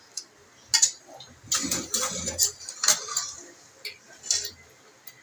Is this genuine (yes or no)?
yes